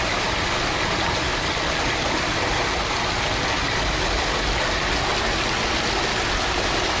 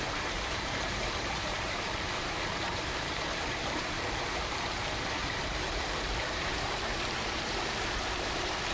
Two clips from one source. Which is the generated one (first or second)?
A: second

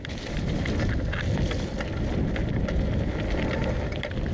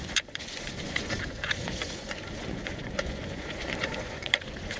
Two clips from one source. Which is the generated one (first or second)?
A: second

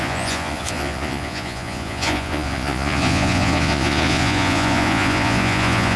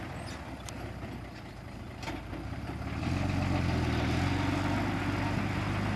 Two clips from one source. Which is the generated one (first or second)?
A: first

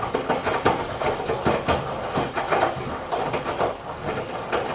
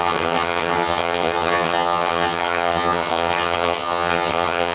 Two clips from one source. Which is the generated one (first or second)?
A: second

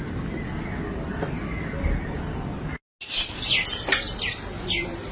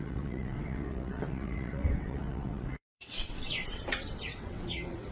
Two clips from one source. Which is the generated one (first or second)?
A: second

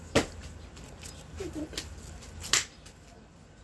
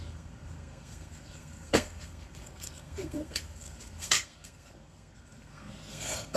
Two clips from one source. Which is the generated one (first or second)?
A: second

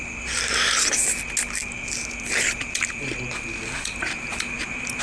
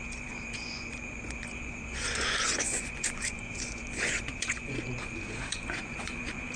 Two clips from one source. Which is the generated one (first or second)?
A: second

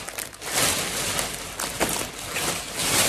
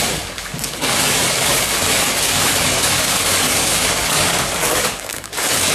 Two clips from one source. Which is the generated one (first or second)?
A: second